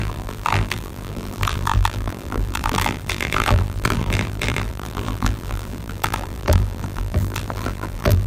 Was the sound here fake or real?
fake